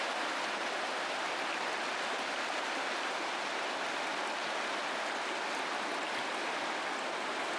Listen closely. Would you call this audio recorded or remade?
recorded